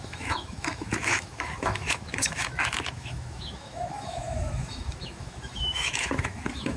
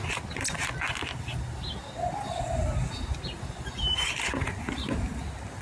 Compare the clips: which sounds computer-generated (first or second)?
first